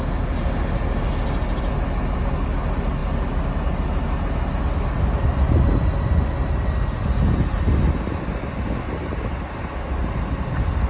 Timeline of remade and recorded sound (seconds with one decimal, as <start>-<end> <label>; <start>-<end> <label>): 0.0-10.9 recorded